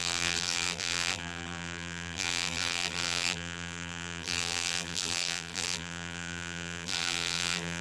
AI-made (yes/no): yes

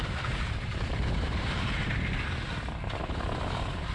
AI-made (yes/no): no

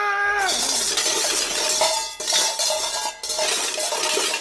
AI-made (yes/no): no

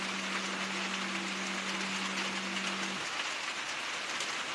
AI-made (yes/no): no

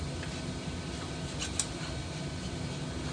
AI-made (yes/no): no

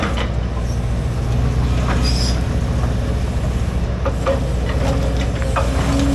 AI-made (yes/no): no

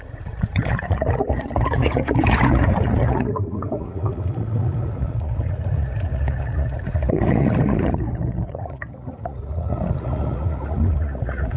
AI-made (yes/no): yes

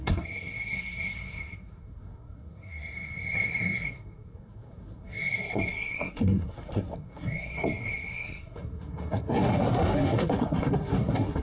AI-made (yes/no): yes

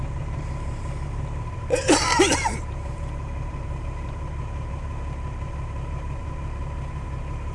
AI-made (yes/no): yes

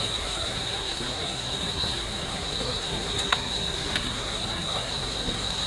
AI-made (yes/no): yes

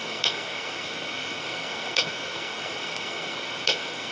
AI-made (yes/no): yes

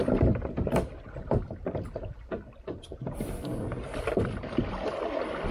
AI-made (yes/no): no